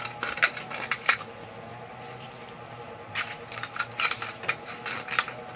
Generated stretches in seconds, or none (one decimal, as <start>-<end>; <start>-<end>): 1.7-4.7